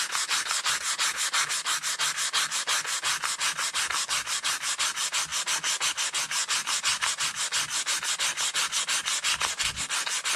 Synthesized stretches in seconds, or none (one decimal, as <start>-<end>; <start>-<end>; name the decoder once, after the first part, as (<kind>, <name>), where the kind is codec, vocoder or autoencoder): none